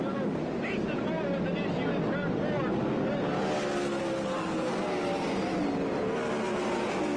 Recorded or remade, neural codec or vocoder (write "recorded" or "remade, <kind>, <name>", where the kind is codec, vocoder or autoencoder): recorded